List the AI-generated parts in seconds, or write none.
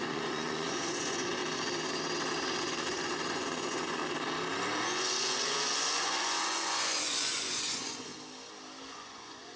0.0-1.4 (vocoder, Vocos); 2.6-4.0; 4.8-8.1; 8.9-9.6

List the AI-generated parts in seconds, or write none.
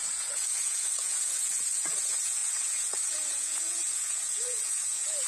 0.0-5.3 (vocoder, Vocos)